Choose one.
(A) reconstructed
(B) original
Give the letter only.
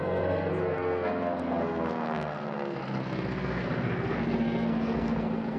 A